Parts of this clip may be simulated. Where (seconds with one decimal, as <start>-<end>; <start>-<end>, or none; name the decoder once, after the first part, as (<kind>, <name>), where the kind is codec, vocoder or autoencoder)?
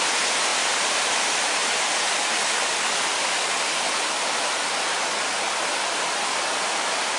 0.5-1.9 (vocoder, BigVGAN v2)